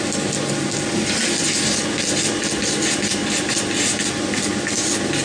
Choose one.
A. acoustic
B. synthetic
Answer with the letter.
A